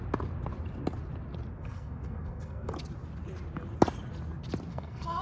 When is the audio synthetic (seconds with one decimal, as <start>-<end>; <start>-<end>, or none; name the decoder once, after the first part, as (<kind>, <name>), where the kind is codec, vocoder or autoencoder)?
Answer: 1.6-2.7 (codec, SNAC); 4.7-5.2